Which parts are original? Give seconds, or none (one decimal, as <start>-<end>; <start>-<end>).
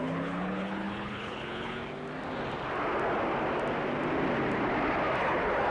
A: 1.8-5.2